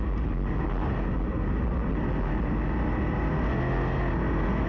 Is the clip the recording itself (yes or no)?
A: yes